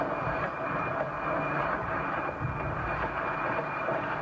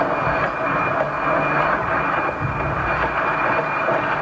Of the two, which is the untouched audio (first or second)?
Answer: second